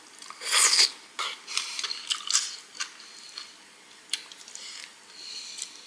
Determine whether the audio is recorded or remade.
recorded